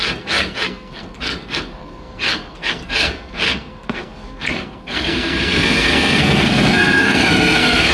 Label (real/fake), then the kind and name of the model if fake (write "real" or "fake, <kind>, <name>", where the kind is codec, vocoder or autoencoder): fake, codec, SNAC